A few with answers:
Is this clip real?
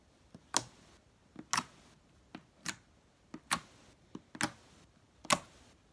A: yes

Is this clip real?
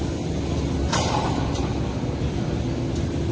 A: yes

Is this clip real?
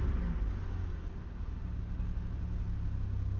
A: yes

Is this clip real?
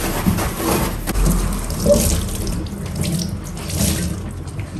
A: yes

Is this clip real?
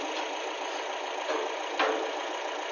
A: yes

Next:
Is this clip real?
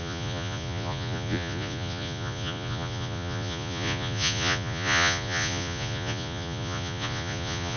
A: no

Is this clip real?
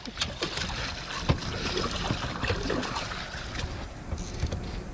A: yes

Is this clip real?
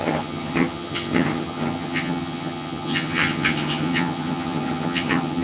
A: no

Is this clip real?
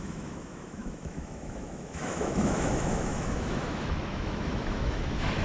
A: no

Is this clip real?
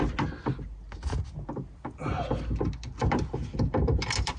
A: yes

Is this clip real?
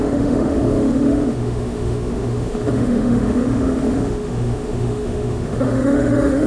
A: no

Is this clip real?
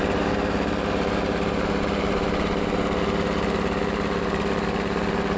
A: yes